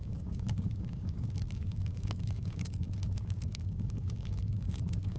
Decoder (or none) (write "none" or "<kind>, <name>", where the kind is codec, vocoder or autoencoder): codec, DAC